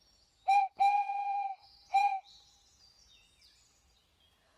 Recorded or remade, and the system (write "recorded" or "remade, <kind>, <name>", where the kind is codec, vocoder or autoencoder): remade, vocoder, Vocos